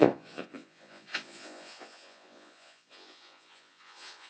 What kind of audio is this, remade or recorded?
remade